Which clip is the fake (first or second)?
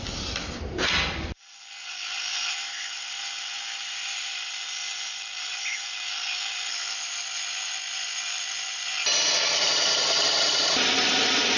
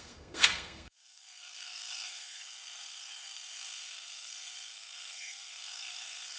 second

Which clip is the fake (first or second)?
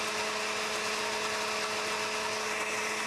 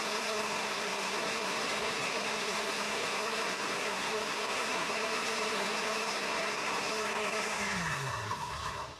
second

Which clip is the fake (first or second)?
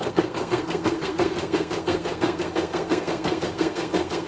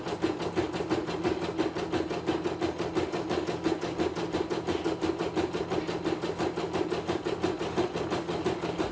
first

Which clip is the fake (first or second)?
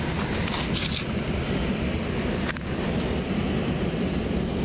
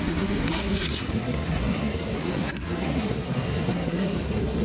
second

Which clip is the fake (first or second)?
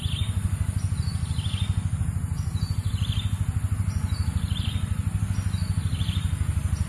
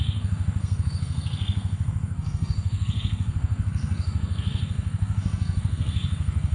second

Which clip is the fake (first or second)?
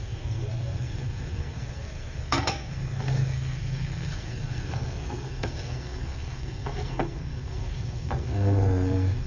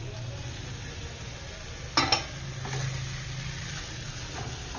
first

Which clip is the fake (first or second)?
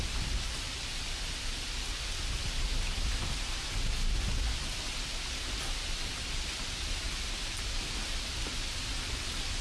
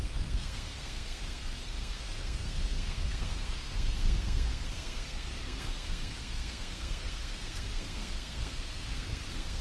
second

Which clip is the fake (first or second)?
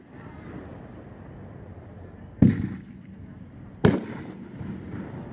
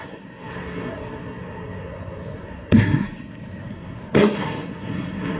second